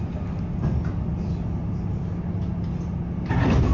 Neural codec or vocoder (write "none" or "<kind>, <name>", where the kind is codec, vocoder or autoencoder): none